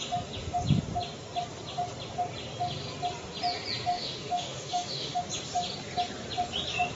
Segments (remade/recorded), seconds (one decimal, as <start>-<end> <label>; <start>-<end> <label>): 0.0-3.9 recorded; 3.9-5.2 remade; 5.2-7.0 recorded